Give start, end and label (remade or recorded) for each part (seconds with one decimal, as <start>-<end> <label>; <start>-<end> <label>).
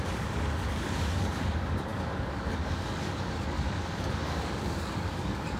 0.0-5.6 remade